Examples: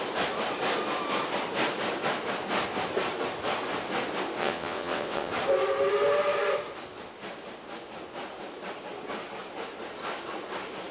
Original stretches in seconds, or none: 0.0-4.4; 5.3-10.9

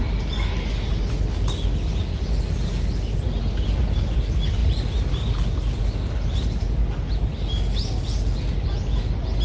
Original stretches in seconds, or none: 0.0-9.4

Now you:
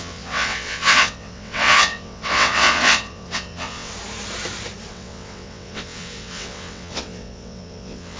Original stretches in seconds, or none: 3.9-4.9

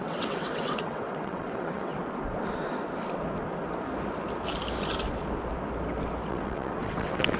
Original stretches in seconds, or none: 1.9-6.3